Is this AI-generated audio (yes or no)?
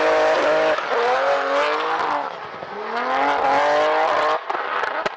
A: no